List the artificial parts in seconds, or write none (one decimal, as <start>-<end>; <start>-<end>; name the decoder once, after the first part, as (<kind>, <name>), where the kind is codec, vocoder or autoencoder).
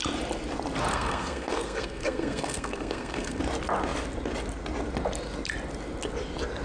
0.9-3.4 (codec, SNAC)